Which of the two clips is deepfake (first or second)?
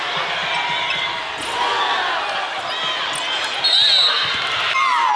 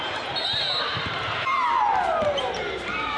second